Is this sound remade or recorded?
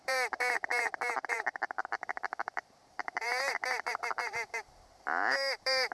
remade